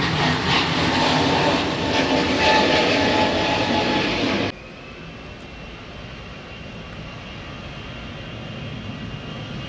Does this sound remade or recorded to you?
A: recorded